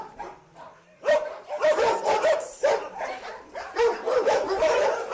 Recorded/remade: remade